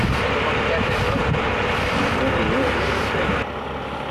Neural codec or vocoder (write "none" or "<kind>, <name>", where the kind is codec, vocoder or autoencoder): none